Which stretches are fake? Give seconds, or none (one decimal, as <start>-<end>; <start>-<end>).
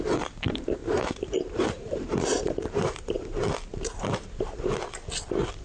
0.8-3.2; 3.7-4.7